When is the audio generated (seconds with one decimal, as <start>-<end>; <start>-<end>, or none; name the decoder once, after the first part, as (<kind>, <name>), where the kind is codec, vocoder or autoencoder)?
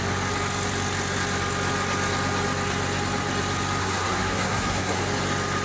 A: 3.8-5.0 (codec, SNAC)